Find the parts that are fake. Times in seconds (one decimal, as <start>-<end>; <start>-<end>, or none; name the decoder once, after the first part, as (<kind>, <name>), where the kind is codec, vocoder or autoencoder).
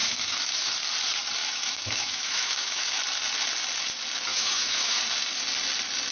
0.0-0.7 (autoencoder, DAC-VAE); 1.4-3.0; 4.3-5.0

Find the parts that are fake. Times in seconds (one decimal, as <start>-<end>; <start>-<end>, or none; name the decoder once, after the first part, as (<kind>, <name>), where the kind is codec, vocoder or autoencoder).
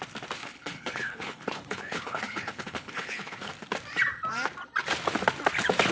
0.4-3.5 (codec, HILCodec)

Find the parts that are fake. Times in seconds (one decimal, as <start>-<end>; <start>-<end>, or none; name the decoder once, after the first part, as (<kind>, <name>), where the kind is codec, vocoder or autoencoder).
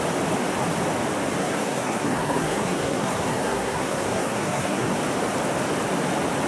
1.4-4.9 (codec, SNAC)